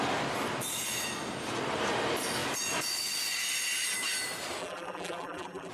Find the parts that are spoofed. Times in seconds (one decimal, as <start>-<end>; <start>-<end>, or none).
4.6-5.7